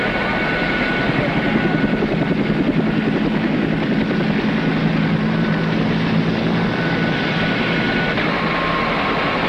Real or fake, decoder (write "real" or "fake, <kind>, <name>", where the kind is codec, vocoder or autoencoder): real